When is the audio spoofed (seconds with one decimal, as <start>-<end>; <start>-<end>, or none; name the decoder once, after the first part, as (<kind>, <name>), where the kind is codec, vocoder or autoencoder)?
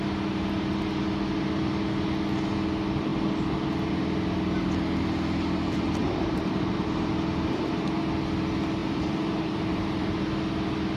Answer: 6.0-7.1 (vocoder, BigVGAN v2); 8.8-10.2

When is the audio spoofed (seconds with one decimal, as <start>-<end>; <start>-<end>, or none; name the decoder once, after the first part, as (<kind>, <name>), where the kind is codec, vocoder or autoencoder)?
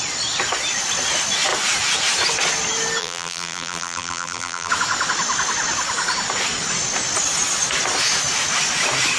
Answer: 3.0-4.7 (vocoder, BigVGAN v2)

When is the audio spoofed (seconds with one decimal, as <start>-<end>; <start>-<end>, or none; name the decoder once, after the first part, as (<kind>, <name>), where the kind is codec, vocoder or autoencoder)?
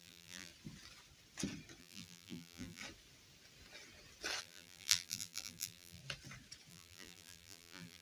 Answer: 0.0-0.5 (vocoder, BigVGAN v2); 1.8-2.8; 4.4-6.0; 6.7-8.0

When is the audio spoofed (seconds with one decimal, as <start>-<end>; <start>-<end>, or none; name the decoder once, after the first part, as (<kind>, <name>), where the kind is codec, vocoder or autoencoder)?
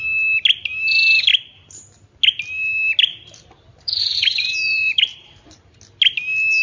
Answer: 3.1-5.8 (vocoder, BigVGAN v2)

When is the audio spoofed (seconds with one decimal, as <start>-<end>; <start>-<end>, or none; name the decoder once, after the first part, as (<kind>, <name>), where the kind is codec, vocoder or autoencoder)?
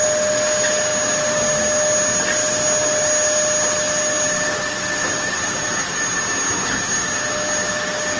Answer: none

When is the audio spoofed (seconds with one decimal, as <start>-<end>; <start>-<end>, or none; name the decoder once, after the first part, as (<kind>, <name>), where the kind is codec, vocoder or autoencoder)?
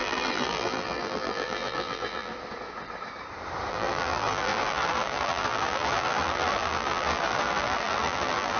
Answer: 0.0-2.3 (vocoder, BigVGAN v2); 3.7-8.6